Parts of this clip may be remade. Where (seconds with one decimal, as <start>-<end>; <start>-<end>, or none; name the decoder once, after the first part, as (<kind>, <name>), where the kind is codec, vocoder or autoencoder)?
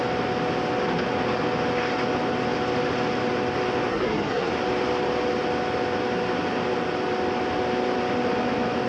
3.9-4.5 (codec, SNAC)